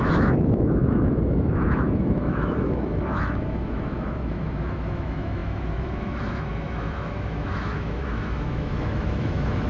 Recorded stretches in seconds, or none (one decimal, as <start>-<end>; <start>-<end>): none